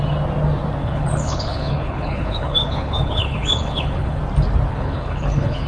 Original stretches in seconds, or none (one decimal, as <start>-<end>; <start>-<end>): 0.0-0.8; 4.2-4.7